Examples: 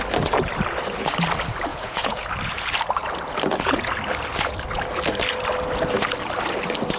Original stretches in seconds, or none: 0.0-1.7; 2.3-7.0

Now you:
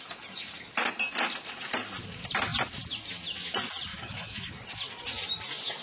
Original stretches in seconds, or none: 0.0-3.9; 4.5-5.8

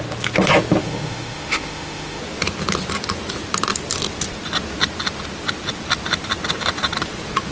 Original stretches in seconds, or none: 0.0-0.8; 2.2-7.5